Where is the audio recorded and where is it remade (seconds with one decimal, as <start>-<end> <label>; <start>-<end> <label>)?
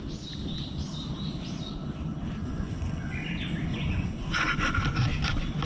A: 0.0-2.4 recorded; 2.4-3.3 remade; 3.3-3.7 recorded; 3.7-4.7 remade; 4.7-5.7 recorded